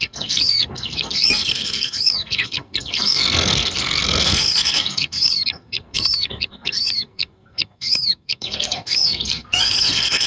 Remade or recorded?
remade